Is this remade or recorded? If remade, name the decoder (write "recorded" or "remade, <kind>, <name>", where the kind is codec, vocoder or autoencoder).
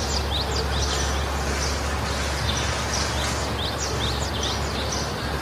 recorded